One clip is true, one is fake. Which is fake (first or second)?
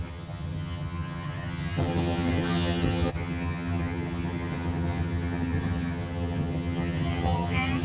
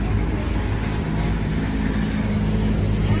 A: first